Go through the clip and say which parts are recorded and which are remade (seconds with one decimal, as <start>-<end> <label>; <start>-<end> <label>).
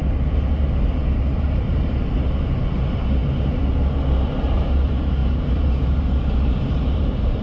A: 0.0-7.4 remade